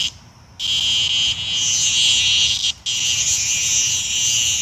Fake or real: real